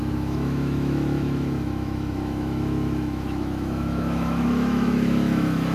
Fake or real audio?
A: fake